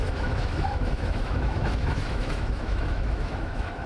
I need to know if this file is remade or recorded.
remade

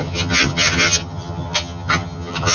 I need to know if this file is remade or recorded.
remade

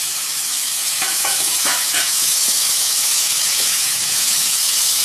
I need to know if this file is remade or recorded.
remade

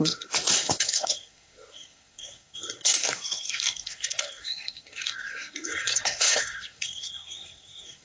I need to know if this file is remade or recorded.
remade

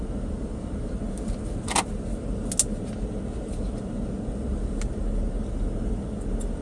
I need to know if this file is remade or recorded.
recorded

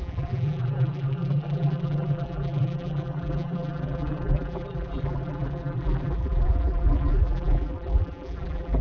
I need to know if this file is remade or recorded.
remade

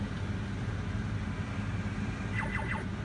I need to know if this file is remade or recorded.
recorded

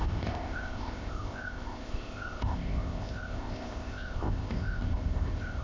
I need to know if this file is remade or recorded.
remade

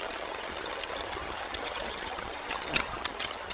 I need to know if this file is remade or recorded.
remade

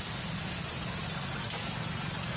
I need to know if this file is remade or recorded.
recorded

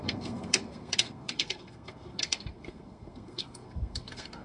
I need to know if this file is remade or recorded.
remade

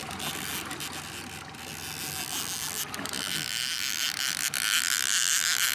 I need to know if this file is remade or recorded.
recorded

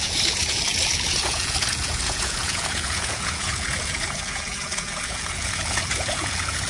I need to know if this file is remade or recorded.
remade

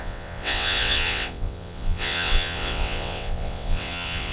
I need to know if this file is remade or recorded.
remade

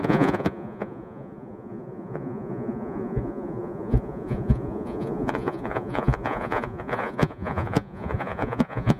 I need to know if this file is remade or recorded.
remade